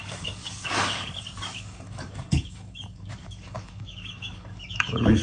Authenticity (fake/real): fake